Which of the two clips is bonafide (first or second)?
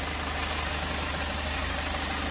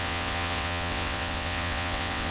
first